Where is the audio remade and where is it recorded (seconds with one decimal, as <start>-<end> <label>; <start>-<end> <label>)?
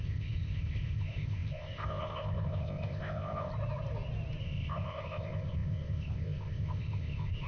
0.0-3.5 remade; 3.5-4.4 recorded; 4.4-7.5 remade